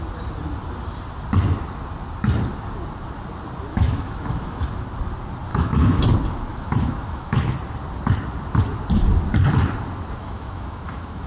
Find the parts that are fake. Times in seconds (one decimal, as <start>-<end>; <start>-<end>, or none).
3.7-4.6; 5.5-6.0; 6.5-7.5; 10.2-11.3